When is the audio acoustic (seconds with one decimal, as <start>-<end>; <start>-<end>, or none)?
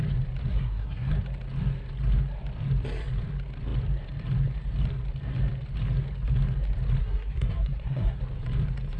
0.0-0.5; 1.1-7.0; 8.2-9.0